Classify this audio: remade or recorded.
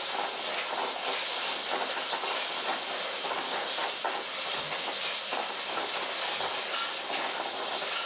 recorded